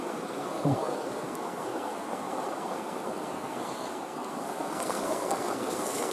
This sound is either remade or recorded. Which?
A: remade